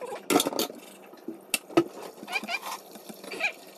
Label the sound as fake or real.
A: real